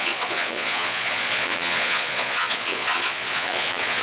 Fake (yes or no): yes